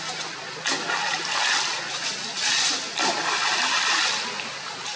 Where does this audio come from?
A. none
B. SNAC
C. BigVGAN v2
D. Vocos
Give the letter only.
A